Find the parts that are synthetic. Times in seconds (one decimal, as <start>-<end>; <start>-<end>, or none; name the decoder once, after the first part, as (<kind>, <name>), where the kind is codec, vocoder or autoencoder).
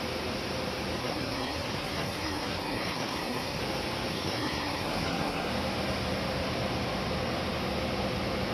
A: 1.0-3.6 (codec, SNAC); 4.1-5.5